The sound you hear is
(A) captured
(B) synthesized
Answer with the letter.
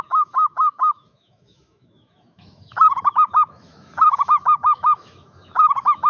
B